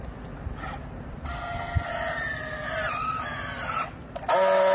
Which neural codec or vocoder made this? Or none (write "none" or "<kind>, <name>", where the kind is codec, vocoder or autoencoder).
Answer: none